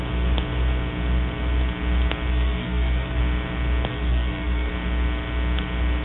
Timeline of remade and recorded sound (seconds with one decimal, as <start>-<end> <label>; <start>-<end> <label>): 0.0-2.3 recorded; 2.3-3.2 remade; 3.2-3.9 recorded; 3.9-4.7 remade; 4.7-6.0 recorded

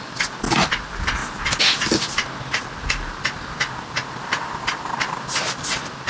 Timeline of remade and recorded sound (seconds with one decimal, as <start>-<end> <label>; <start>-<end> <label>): 0.0-6.1 recorded

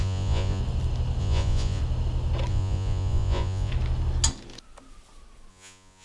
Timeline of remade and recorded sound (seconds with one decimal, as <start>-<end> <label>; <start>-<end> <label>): 0.0-0.6 remade; 0.6-1.2 recorded; 1.2-1.8 remade; 1.8-2.5 recorded; 2.5-3.7 remade; 3.7-5.5 recorded; 5.5-6.0 remade

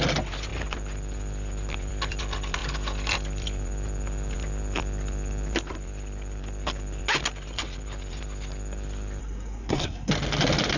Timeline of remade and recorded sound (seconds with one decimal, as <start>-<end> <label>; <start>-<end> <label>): 0.0-9.2 recorded; 9.2-10.1 remade; 10.1-10.8 recorded